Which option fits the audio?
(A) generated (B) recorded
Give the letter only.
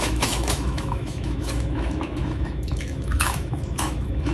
A